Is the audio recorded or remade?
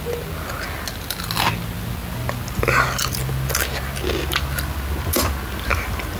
recorded